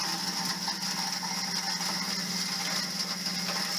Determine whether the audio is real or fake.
real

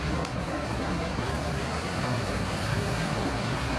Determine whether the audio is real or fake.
fake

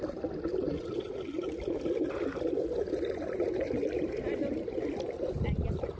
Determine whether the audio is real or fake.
real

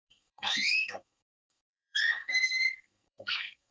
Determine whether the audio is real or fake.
fake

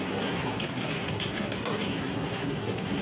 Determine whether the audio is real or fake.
fake